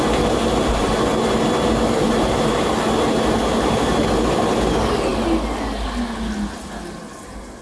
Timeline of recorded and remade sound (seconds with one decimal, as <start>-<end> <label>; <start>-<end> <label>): 0.0-7.6 recorded